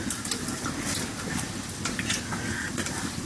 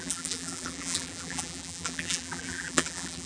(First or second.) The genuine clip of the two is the first